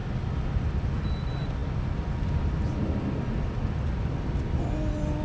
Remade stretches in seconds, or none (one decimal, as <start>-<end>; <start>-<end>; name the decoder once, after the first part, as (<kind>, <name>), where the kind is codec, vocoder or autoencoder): none